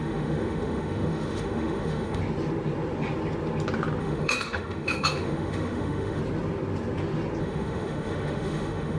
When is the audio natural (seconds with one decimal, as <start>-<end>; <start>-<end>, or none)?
2.2-4.0; 6.2-7.4